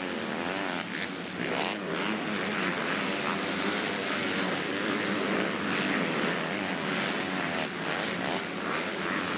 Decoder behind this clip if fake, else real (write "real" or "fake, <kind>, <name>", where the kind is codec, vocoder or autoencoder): real